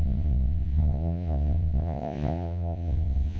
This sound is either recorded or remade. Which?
remade